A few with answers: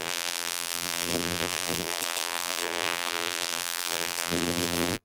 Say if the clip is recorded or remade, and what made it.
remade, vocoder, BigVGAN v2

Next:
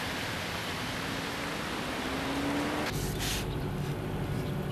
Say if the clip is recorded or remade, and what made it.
recorded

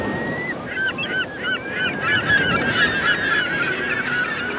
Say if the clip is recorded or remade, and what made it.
remade, vocoder, BigVGAN v2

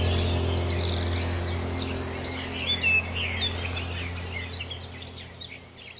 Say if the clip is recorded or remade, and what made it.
recorded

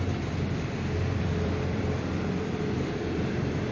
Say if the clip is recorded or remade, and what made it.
remade, vocoder, BigVGAN v2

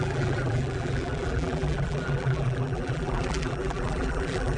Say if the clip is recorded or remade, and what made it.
remade, vocoder, BigVGAN v2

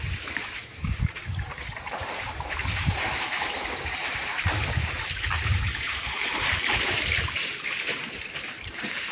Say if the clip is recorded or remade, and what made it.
remade, vocoder, BigVGAN v2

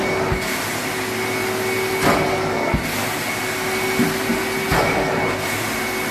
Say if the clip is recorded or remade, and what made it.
recorded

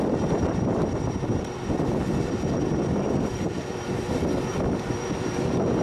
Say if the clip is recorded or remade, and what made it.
remade, vocoder, BigVGAN v2